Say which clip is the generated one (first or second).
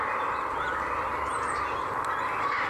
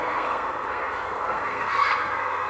second